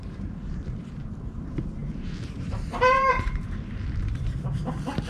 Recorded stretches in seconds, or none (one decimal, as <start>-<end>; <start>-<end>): none